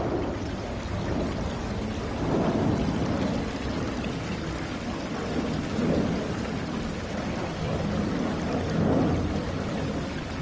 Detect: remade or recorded recorded